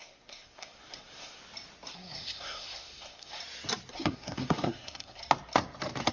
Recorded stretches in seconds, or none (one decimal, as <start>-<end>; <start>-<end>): 1.4-1.9; 3.4-3.9; 5.2-6.1